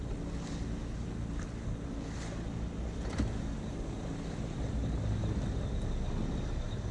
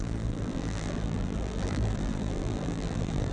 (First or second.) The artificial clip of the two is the second